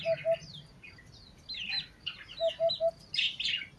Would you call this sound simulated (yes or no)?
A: no